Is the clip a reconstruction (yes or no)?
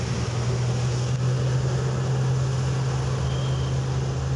no